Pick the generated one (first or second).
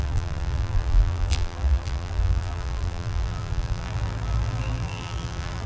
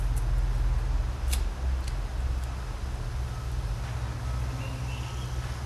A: first